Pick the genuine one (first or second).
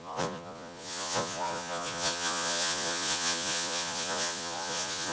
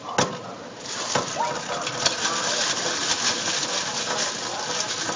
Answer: second